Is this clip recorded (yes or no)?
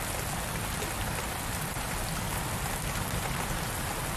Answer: yes